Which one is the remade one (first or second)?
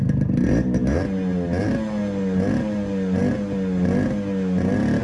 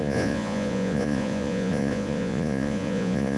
second